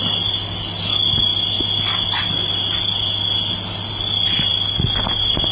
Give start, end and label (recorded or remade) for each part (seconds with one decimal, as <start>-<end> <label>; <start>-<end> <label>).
0.0-5.5 recorded

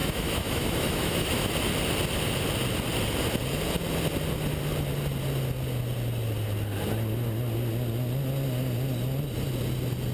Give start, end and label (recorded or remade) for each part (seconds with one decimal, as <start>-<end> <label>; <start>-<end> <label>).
0.0-1.5 remade; 1.5-10.1 recorded

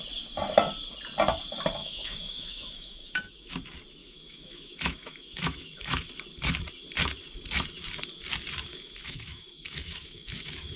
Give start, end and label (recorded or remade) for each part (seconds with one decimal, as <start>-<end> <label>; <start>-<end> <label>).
0.0-1.8 recorded; 1.8-3.5 remade; 3.5-4.0 recorded; 4.0-6.1 remade; 6.1-8.7 recorded; 8.7-10.8 remade

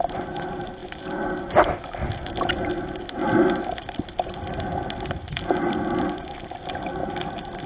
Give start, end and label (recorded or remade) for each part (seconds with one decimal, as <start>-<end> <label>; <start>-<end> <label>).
0.0-7.7 recorded

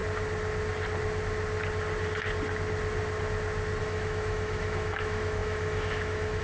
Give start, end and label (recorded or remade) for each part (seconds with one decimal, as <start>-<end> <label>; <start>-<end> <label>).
0.0-3.8 recorded; 3.8-6.4 remade